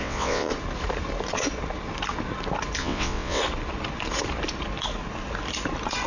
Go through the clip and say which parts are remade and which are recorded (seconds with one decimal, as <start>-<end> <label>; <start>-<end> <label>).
0.0-0.5 remade; 0.5-2.8 recorded; 2.8-3.4 remade; 3.4-6.1 recorded